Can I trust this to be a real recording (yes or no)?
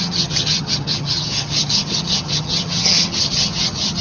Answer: no